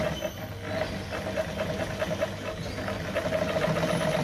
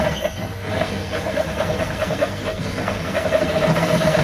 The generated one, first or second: second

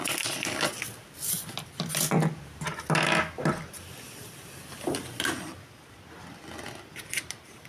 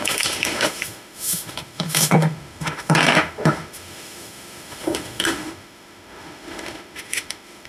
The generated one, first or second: second